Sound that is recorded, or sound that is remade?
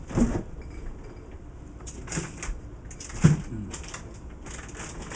recorded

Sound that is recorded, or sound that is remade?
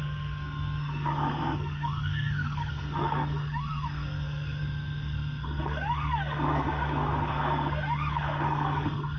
remade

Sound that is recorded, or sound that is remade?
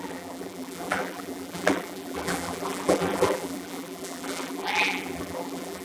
remade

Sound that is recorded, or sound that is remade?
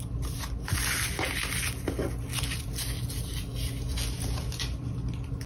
recorded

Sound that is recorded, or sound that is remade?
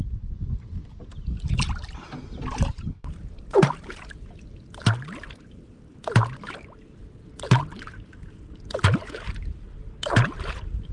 recorded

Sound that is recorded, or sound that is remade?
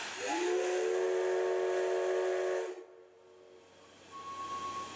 recorded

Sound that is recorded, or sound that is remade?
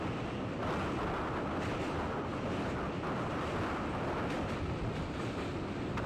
recorded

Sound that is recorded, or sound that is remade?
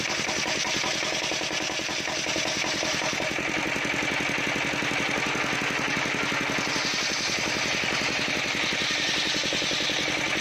recorded